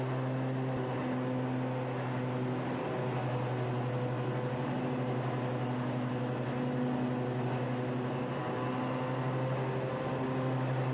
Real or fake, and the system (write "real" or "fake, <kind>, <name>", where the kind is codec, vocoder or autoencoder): real